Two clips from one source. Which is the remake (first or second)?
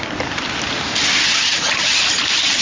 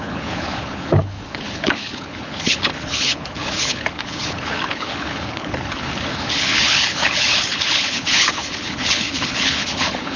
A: second